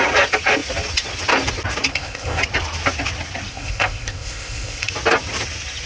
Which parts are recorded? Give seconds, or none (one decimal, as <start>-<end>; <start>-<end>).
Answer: 0.0-1.9; 2.4-3.5; 4.9-5.9